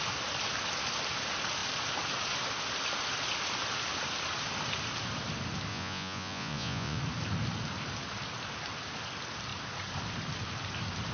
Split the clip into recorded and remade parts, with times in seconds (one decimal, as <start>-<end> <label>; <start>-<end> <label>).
0.0-5.7 recorded; 5.7-7.0 remade; 7.0-11.1 recorded